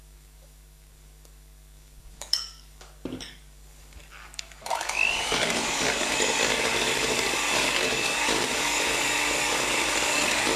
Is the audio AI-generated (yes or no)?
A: yes